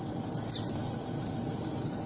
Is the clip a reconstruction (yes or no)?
no